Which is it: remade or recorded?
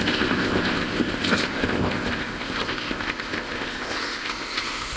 remade